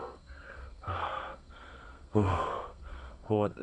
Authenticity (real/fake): fake